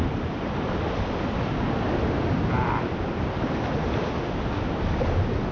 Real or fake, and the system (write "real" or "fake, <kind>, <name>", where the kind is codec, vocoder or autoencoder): real